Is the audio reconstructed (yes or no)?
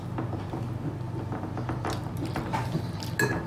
no